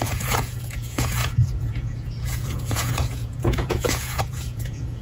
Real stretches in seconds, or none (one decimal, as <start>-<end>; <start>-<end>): none